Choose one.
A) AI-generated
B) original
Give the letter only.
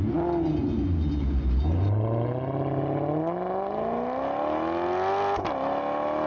B